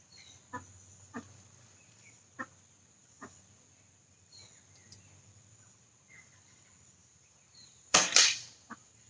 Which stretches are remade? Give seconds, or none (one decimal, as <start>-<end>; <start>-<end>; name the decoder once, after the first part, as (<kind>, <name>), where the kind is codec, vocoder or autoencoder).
7.0-9.1 (vocoder, BigVGAN v2)